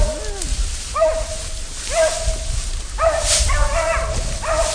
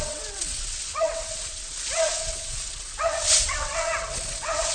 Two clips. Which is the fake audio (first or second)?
second